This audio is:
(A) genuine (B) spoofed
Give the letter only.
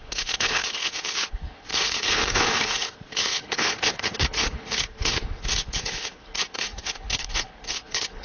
B